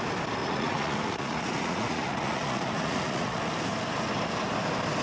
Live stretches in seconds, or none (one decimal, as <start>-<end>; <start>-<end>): 0.0-0.4; 3.4-5.0